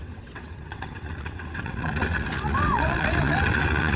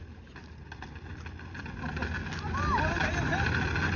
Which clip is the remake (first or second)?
first